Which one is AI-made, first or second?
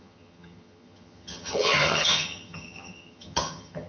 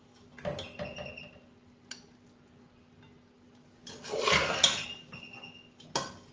first